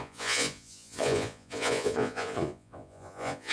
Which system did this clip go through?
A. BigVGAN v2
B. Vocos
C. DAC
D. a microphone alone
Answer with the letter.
B